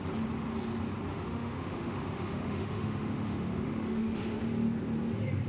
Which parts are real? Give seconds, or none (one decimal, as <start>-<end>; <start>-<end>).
0.0-1.1; 4.4-5.5